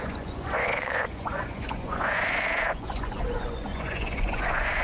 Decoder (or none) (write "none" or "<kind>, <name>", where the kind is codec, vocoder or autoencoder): vocoder, Vocos